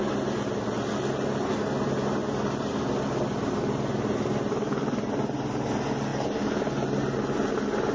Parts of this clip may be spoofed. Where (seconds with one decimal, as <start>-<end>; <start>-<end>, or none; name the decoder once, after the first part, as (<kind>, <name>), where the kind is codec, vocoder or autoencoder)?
none